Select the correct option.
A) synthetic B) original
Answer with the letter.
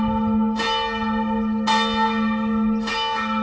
B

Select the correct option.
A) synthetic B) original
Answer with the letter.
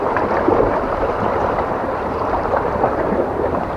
A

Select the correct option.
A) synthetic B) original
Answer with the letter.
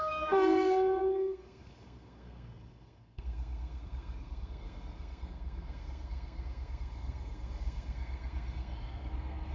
A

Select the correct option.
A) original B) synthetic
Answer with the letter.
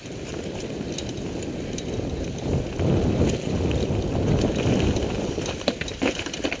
B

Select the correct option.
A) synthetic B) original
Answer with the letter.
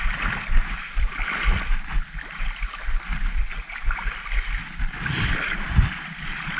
B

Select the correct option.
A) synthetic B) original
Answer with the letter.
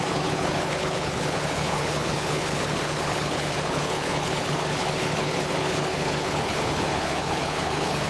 A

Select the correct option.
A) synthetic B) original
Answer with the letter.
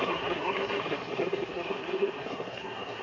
A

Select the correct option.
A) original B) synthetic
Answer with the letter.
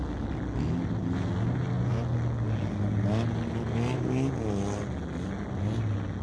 A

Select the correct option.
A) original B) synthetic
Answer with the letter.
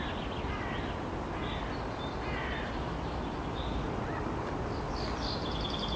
A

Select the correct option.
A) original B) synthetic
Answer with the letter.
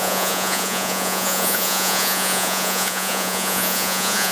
B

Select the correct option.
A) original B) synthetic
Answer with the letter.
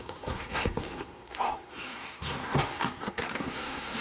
B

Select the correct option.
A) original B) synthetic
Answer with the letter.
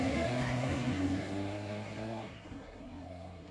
B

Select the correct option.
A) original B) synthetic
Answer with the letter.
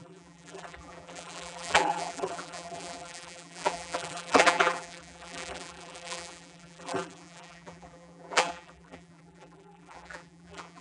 B